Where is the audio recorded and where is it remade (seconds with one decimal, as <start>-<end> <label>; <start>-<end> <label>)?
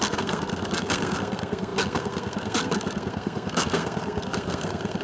0.0-5.0 remade